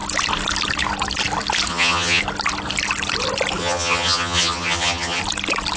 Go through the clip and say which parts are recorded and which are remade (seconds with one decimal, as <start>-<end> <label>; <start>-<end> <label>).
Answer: 0.0-1.7 recorded; 1.7-2.2 remade; 2.2-3.6 recorded; 3.6-5.2 remade; 5.2-5.8 recorded